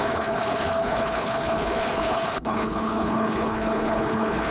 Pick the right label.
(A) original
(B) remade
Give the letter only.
B